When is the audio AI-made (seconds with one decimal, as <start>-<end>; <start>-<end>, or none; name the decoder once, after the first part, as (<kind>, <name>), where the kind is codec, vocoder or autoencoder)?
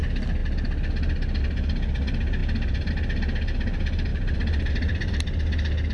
none